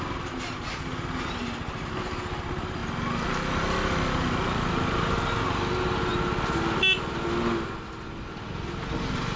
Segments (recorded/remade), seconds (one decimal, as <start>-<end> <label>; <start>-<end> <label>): 0.0-9.4 recorded